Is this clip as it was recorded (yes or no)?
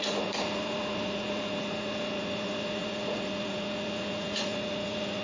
no